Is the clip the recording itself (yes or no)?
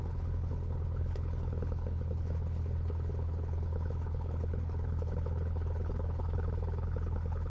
no